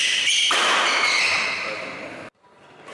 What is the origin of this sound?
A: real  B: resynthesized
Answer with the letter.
A